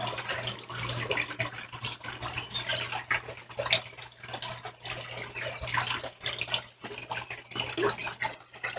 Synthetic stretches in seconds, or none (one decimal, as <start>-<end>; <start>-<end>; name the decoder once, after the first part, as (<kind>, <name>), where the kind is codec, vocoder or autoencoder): none